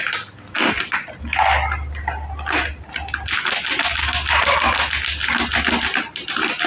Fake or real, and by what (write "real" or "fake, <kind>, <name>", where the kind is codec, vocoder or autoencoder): real